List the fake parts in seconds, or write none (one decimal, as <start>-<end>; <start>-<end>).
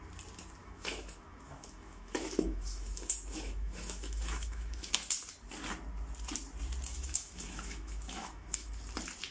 0.6-4.9; 6.9-8.7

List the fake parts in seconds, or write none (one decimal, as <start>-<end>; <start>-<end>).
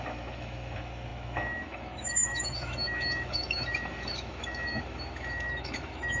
0.0-6.2